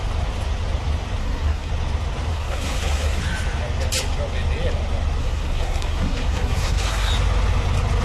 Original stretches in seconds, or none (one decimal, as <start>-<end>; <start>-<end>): 0.0-1.2; 1.7-2.3; 3.2-5.2; 7.1-8.0